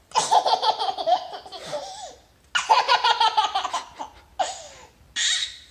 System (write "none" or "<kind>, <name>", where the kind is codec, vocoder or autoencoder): none